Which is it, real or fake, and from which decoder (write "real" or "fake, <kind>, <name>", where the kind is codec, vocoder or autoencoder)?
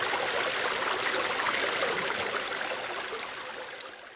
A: real